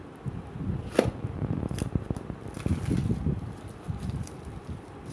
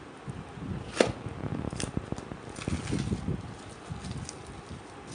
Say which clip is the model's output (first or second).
first